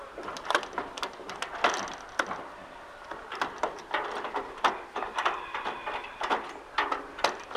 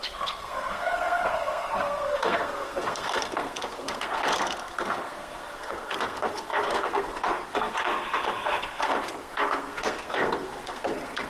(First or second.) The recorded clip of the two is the first